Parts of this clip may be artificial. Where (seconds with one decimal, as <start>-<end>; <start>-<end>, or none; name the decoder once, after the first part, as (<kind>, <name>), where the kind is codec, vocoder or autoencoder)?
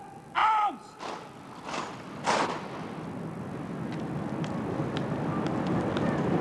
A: none